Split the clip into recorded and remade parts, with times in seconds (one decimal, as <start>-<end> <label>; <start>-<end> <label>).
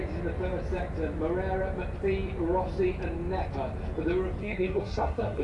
0.0-4.4 recorded; 4.4-5.4 remade